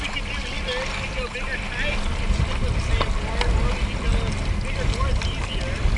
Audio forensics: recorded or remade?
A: recorded